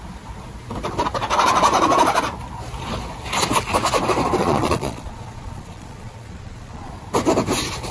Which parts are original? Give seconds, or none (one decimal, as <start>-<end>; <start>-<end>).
0.0-4.4; 6.9-7.9